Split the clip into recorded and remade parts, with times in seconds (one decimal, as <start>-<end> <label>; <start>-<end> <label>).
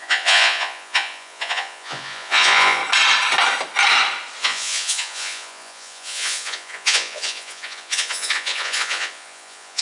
0.0-2.8 remade; 2.8-4.4 recorded; 4.4-9.8 remade